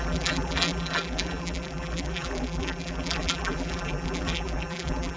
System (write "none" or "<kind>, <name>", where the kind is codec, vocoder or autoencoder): vocoder, BigVGAN v2